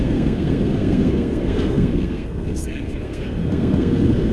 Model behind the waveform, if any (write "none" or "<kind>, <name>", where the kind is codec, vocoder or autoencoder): codec, SNAC